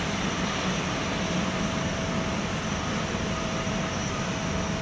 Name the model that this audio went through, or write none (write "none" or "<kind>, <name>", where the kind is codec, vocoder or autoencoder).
vocoder, BigVGAN v2